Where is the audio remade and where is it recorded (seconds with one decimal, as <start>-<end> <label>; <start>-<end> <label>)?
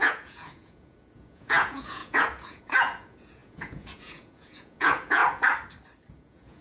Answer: 0.0-5.2 remade; 5.2-6.1 recorded; 6.1-6.6 remade